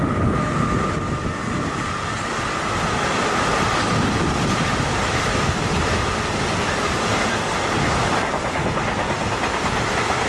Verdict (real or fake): real